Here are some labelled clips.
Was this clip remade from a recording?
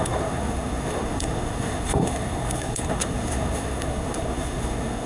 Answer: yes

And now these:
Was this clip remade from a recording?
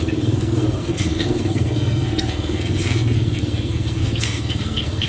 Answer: yes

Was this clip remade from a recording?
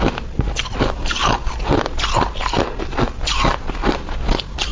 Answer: no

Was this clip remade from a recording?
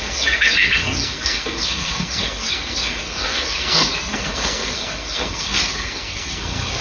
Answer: yes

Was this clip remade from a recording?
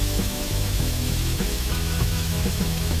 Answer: yes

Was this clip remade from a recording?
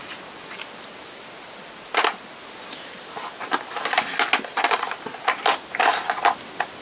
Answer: no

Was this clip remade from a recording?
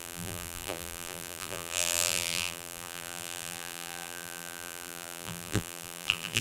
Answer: yes